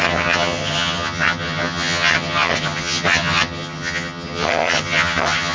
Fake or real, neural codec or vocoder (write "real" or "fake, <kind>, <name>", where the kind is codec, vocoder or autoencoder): fake, vocoder, HiFi-GAN